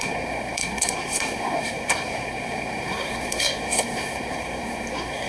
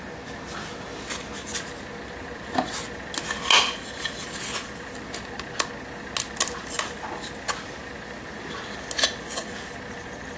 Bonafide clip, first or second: second